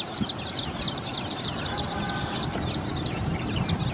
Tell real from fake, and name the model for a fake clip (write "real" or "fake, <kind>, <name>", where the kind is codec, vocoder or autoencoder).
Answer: real